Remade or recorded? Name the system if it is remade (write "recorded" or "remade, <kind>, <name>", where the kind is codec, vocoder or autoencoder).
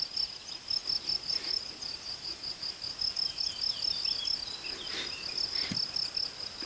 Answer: recorded